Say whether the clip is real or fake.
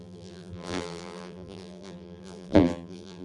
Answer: fake